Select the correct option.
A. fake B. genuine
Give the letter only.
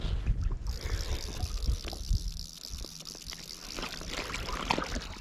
B